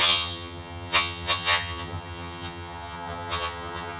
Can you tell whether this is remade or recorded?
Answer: remade